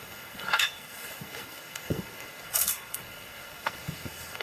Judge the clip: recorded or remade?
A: remade